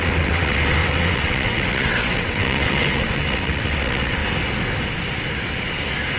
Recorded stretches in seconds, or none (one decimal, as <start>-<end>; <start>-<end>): 4.2-6.2

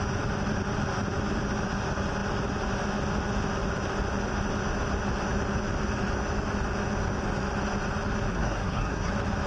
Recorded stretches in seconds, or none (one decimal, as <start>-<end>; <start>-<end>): 0.0-8.3; 9.1-9.5